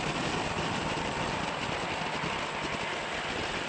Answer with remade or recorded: recorded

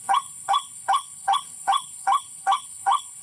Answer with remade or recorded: remade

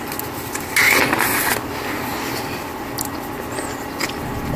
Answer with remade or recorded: recorded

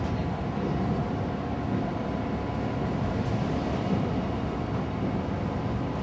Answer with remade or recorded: recorded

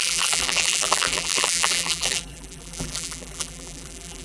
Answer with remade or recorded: remade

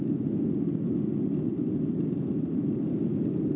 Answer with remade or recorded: recorded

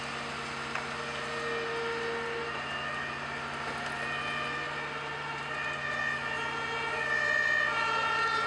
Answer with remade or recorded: recorded